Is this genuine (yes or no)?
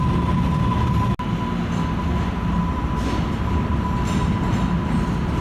yes